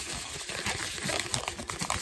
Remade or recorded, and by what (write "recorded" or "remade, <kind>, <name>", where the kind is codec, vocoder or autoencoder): recorded